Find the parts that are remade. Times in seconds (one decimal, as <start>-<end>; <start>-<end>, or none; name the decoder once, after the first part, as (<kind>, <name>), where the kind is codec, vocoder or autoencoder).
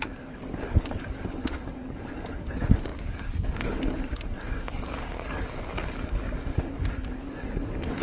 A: 0.0-8.0 (codec, DAC)